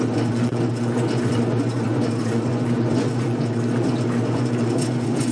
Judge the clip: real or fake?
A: fake